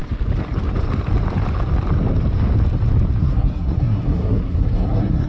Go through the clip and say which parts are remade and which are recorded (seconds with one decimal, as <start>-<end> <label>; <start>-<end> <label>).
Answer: 0.0-3.2 recorded; 3.2-5.3 remade